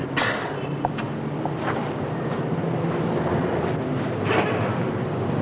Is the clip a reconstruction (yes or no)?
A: no